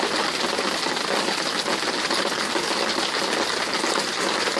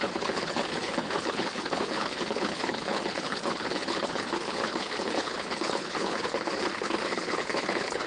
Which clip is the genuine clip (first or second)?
first